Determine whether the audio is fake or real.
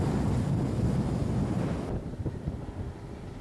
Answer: real